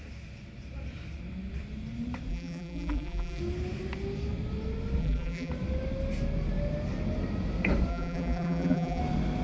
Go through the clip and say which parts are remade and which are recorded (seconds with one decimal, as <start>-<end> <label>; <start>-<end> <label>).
0.0-2.3 recorded; 2.3-3.4 remade; 3.4-5.0 recorded; 5.0-5.5 remade; 5.5-7.9 recorded; 7.9-9.0 remade; 9.0-9.4 recorded